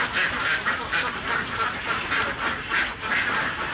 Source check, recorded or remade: recorded